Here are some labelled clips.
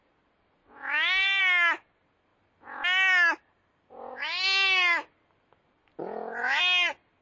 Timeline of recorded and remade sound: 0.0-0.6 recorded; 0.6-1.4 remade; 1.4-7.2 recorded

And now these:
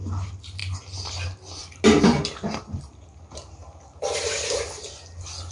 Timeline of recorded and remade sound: 0.0-5.5 recorded

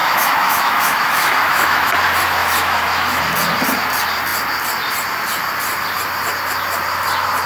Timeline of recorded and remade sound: 0.0-1.9 remade; 1.9-2.4 recorded; 2.4-3.2 remade; 3.2-7.5 recorded